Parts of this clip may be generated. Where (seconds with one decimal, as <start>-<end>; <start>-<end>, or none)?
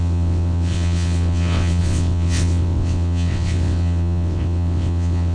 0.0-5.3